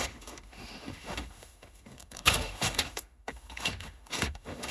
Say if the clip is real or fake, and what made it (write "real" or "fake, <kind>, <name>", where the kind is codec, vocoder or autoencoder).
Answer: fake, autoencoder, DAC-VAE